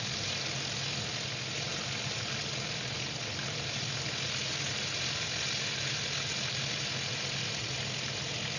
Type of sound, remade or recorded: recorded